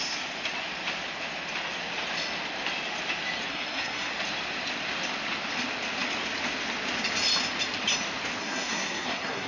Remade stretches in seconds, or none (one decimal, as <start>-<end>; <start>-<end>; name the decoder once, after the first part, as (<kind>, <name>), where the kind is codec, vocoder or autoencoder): 3.5-4.1 (codec, SNAC); 8.4-9.5